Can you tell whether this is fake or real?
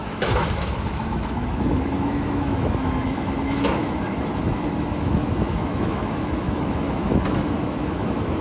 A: fake